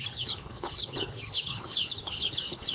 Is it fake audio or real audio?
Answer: fake